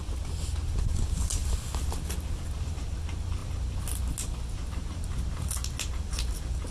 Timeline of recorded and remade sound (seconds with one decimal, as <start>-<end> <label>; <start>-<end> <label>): 0.0-6.7 recorded